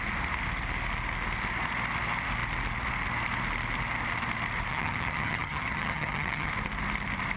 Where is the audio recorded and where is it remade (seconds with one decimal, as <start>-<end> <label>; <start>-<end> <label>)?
0.0-4.7 recorded; 4.7-6.5 remade; 6.5-7.4 recorded